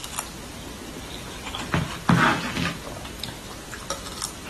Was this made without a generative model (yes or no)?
yes